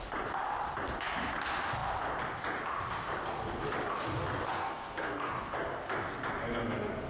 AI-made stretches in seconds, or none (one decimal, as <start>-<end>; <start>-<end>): 4.5-5.3

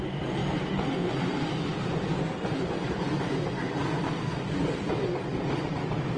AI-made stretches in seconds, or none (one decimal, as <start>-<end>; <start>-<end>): none